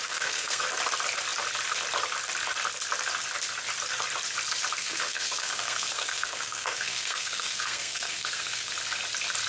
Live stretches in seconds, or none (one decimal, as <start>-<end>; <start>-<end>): 0.6-4.8; 8.7-9.5